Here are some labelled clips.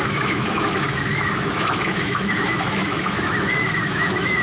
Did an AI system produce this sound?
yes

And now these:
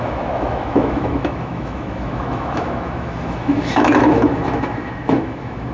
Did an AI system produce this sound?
yes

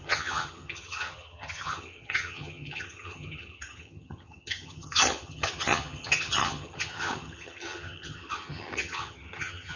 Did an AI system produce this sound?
yes